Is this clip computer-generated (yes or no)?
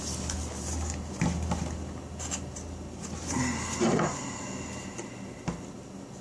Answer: no